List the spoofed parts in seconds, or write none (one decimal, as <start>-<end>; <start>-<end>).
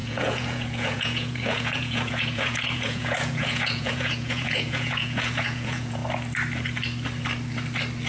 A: 0.0-6.0